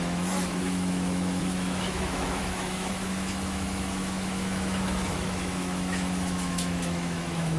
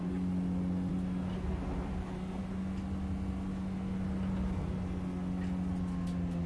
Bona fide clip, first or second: second